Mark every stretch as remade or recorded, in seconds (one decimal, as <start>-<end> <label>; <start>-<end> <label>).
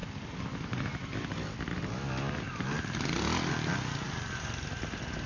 0.0-5.3 recorded